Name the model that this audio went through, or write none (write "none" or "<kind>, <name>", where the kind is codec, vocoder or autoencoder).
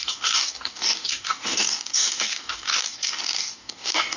codec, DAC